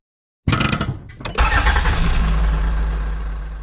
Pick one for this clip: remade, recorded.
recorded